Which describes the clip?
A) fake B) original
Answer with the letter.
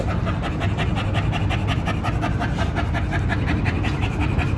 B